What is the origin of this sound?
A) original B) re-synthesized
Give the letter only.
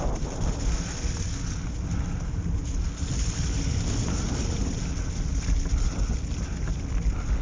A